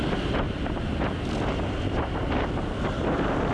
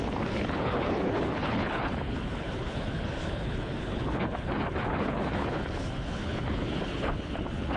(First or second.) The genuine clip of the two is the first